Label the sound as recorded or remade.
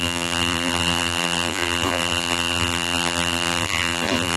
remade